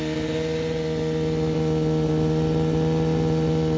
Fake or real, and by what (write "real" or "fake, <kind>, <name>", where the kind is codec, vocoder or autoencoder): real